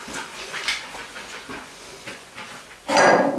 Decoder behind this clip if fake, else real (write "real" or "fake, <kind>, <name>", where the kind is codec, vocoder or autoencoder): fake, vocoder, Vocos